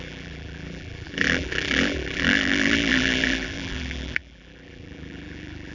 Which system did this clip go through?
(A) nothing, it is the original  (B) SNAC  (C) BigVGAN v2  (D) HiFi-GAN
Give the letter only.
C